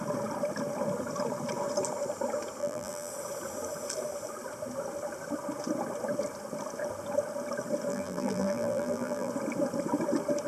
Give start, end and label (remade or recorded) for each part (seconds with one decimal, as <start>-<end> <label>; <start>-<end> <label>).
0.0-2.6 recorded; 2.6-3.1 remade; 3.1-7.9 recorded; 7.9-9.3 remade; 9.3-10.5 recorded